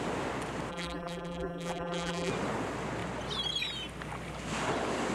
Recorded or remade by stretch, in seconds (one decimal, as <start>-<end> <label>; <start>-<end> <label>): 0.0-0.7 recorded; 0.7-2.3 remade; 2.3-5.1 recorded